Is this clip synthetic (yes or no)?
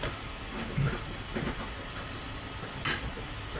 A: no